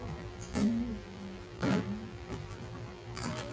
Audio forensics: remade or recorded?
remade